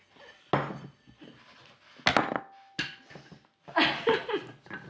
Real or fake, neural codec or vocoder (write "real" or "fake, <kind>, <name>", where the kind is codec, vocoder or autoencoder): real